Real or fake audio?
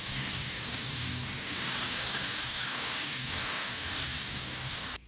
fake